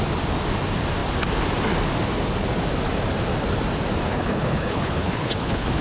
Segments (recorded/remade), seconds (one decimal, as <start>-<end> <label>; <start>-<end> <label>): 0.0-4.1 recorded; 4.1-5.8 remade